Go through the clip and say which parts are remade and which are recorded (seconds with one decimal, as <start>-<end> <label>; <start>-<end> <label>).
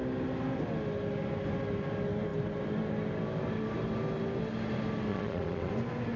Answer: 0.0-5.1 recorded; 5.1-5.7 remade; 5.7-6.2 recorded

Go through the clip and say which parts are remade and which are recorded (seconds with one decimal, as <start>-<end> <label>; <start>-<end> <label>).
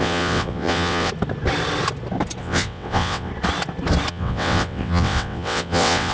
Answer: 0.0-1.1 remade; 1.1-2.4 recorded; 2.4-3.3 remade; 3.3-4.1 recorded; 4.1-6.1 remade